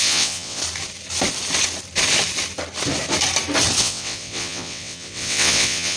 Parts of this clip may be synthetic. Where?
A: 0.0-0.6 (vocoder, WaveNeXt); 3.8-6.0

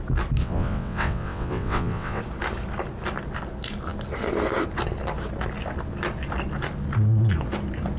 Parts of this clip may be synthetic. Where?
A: 0.4-2.2 (vocoder, WaveNeXt)

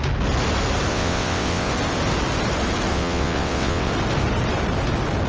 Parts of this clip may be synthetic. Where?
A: 0.9-1.7 (vocoder, WaveNeXt); 2.9-3.9

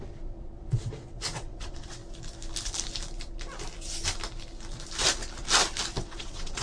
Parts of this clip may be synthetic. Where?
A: 0.0-2.0 (vocoder, WaveNeXt); 6.0-6.6